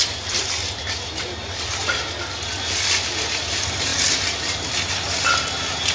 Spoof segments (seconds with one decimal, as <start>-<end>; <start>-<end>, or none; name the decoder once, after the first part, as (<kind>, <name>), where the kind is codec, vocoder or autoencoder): 0.0-2.0 (vocoder, BigVGAN v2)

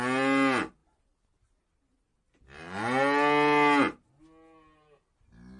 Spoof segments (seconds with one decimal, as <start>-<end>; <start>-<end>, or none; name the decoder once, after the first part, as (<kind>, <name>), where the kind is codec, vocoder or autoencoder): none

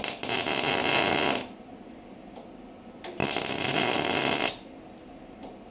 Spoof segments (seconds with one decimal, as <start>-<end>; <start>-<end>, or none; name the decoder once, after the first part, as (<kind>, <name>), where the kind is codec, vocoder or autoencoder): none

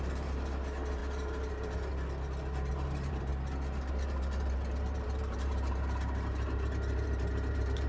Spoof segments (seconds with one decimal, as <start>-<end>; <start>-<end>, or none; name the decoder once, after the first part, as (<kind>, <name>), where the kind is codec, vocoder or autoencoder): 0.0-1.9 (vocoder, BigVGAN v2); 2.7-3.3; 3.9-7.9

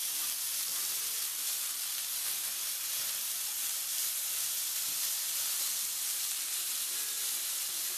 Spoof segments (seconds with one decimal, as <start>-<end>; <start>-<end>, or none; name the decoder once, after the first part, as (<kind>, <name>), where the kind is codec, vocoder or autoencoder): 0.7-4.8 (vocoder, BigVGAN v2)

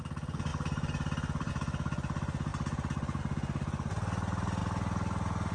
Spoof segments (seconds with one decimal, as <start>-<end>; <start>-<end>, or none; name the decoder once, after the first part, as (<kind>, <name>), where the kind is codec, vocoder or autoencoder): 0.5-1.5 (vocoder, BigVGAN v2); 4.6-5.5

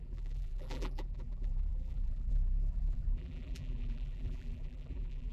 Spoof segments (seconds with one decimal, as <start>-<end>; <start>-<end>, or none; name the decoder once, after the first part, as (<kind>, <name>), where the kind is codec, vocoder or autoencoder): 0.0-5.3 (vocoder, BigVGAN v2)

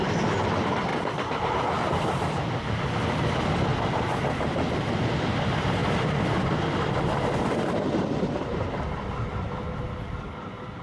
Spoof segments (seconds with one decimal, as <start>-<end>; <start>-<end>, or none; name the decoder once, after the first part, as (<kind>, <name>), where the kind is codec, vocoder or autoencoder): 5.8-8.8 (vocoder, BigVGAN v2)